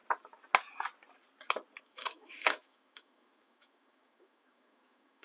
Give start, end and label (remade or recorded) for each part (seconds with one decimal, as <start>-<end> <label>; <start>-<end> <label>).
0.0-1.8 recorded; 1.8-5.2 remade